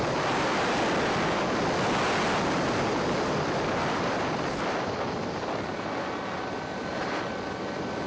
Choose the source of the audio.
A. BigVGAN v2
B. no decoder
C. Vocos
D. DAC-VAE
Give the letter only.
B